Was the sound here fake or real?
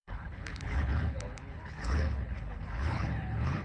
fake